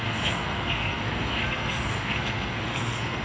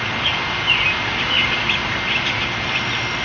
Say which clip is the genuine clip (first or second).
second